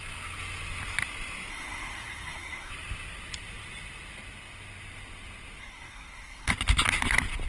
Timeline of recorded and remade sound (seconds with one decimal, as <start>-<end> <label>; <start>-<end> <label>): 0.0-1.5 recorded; 1.5-2.7 remade; 2.7-5.6 recorded; 5.6-6.5 remade; 6.5-7.5 recorded